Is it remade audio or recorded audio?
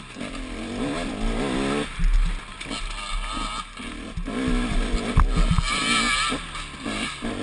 recorded